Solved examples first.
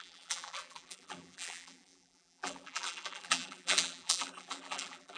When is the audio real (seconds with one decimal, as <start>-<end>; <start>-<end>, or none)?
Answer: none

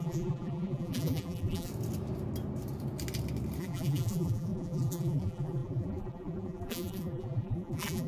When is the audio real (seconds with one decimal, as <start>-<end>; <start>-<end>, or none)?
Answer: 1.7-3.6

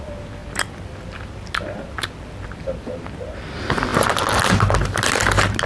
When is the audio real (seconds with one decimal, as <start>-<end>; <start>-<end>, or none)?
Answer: 0.0-5.7

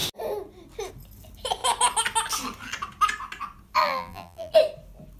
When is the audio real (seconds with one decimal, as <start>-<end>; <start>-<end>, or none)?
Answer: 0.0-3.8; 4.5-5.2

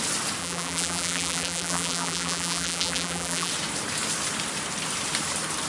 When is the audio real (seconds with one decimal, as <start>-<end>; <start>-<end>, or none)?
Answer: 0.0-0.4; 3.5-5.7

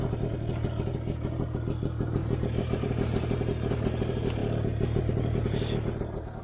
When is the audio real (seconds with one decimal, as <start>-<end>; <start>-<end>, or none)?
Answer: 0.0-2.2; 2.9-6.4